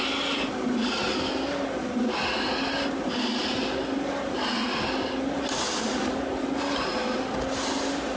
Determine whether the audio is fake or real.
real